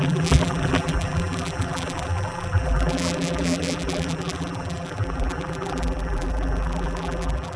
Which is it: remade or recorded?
remade